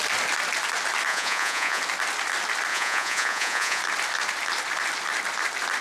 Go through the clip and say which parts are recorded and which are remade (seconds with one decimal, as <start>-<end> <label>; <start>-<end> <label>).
0.0-1.1 recorded; 1.1-1.8 remade; 1.8-2.7 recorded; 2.7-3.8 remade; 3.8-5.8 recorded